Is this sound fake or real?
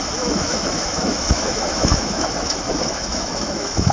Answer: fake